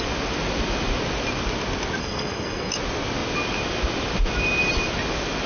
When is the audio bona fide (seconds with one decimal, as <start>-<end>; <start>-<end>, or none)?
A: 0.0-2.0; 2.7-5.5